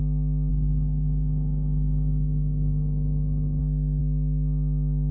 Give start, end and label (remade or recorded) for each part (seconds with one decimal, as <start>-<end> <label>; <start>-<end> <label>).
0.0-0.5 recorded; 0.5-3.6 remade; 3.6-5.1 recorded